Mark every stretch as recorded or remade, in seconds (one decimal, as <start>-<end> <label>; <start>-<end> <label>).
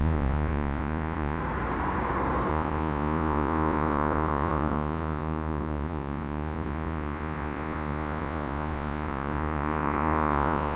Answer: 0.0-1.4 remade; 1.4-2.5 recorded; 2.5-10.8 remade